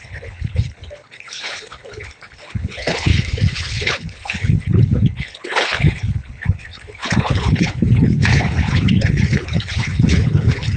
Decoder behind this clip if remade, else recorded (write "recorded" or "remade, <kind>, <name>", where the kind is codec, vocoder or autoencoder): remade, codec, HILCodec